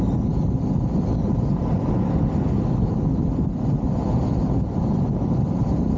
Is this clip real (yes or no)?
yes